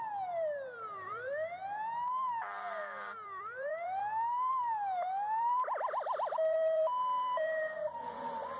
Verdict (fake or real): fake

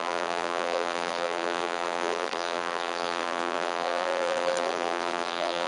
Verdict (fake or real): fake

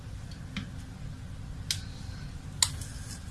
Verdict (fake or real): real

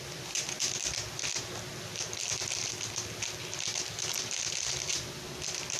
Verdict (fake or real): fake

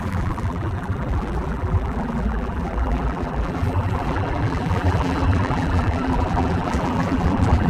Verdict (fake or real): fake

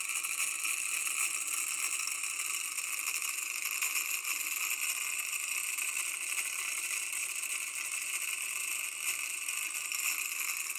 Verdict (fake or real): real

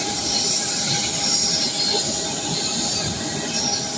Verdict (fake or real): real